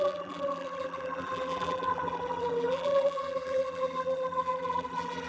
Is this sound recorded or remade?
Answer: remade